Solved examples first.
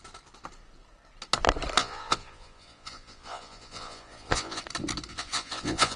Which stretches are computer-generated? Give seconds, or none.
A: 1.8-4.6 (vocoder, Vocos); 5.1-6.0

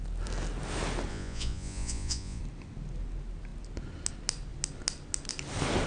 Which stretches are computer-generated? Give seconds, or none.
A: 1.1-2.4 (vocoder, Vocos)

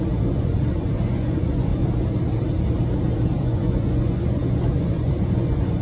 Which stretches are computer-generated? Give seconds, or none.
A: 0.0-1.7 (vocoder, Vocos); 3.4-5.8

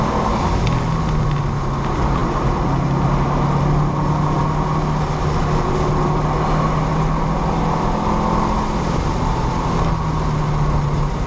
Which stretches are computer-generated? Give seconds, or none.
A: none

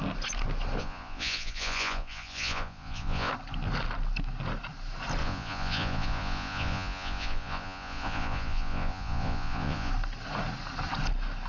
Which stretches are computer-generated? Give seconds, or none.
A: 0.8-3.3 (vocoder, Vocos); 5.2-9.9

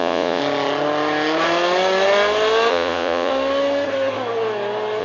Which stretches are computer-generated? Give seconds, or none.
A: 0.0-0.4 (vocoder, Vocos); 2.7-3.3